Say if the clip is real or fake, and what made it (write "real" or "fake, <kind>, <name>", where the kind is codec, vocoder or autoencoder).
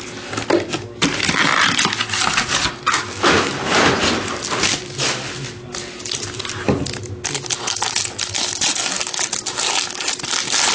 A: real